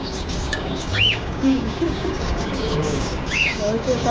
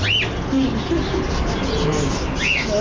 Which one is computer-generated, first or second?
first